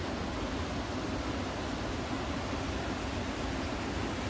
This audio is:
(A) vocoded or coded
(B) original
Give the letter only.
B